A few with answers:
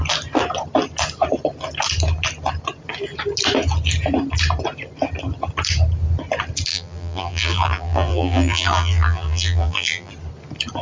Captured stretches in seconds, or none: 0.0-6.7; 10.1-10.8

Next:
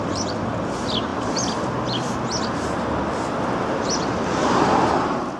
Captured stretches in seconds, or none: 0.0-1.1; 2.2-5.4